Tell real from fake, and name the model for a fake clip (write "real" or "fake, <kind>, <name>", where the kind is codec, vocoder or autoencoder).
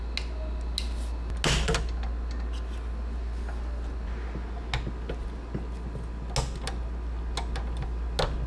real